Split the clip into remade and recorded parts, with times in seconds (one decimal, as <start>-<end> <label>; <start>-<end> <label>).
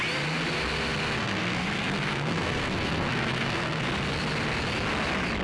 0.0-1.2 recorded; 1.2-3.8 remade; 3.8-5.4 recorded